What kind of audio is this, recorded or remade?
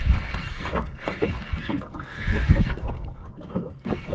remade